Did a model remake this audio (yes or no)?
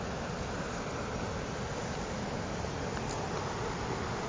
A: no